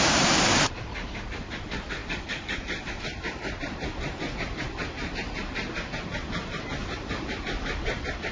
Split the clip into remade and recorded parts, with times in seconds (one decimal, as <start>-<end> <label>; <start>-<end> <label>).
0.0-8.3 remade